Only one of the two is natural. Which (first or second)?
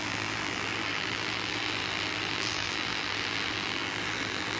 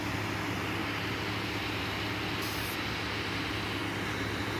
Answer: second